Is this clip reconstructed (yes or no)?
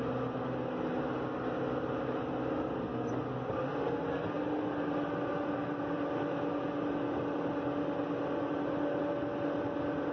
no